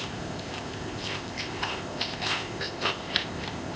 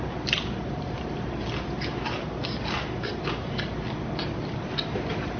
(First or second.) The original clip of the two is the second